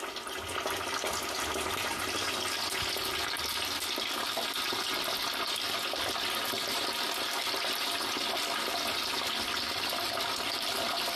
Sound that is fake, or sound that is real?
real